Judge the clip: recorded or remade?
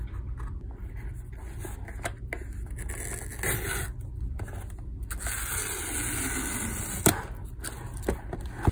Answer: recorded